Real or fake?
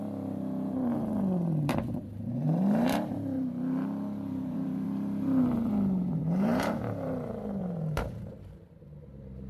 fake